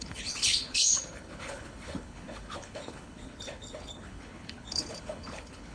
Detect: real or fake fake